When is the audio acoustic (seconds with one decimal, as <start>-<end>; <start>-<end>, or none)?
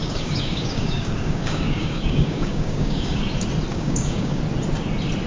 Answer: 3.2-3.7; 4.4-5.3